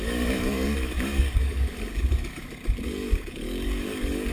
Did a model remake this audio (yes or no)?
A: yes